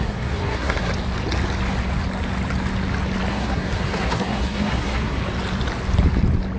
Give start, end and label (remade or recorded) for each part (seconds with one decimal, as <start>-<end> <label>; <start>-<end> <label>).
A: 0.0-0.9 remade; 0.9-3.3 recorded; 3.3-5.2 remade; 5.2-6.6 recorded